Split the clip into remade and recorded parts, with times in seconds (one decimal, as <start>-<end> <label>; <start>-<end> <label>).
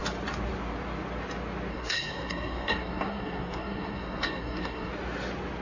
0.0-1.7 recorded; 1.7-4.9 remade; 4.9-5.6 recorded